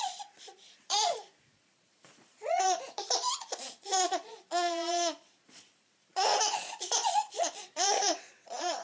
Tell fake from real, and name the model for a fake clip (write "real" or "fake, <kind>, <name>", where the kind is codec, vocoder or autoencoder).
fake, vocoder, Vocos